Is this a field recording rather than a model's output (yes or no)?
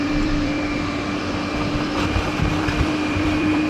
no